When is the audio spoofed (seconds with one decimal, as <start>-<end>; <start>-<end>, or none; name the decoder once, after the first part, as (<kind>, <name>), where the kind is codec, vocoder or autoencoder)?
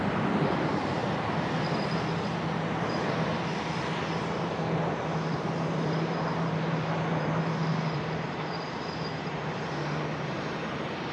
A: 0.0-1.0 (vocoder, BigVGAN v2); 4.4-11.1